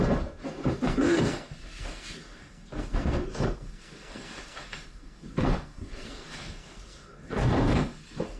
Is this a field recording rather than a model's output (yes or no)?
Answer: no